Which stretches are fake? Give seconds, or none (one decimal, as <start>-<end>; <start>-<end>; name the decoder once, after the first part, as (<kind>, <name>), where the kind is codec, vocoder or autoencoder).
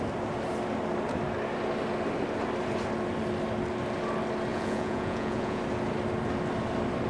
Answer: 4.5-5.6 (vocoder, Vocos)